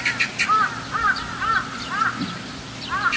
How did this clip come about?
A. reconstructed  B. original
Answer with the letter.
B